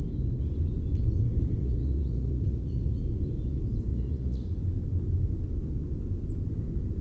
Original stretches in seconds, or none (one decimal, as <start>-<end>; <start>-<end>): 0.0-1.6; 3.0-3.9; 4.6-7.0